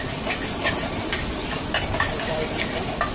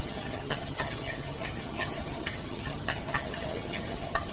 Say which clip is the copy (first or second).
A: second